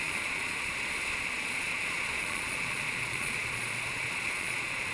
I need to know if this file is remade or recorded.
remade